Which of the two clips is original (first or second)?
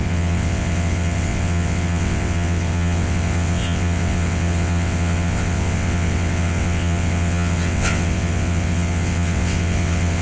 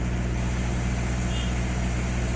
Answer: second